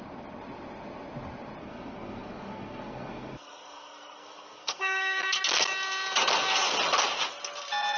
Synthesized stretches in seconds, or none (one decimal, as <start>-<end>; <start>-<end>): 1.6-5.4